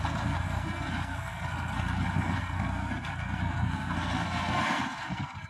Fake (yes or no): yes